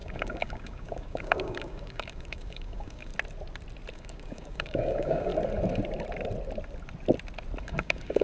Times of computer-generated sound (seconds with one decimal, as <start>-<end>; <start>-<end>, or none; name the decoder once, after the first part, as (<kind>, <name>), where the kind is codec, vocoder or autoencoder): 0.0-3.1 (codec, DAC); 3.9-5.3; 7.6-8.2